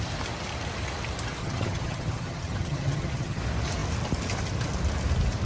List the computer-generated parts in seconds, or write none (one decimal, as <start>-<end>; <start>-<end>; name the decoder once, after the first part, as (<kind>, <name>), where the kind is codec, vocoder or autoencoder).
1.4-3.4 (vocoder, HiFi-GAN)